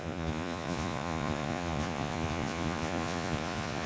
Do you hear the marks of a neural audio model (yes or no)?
yes